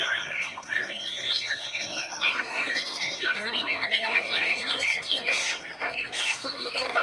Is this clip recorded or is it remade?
remade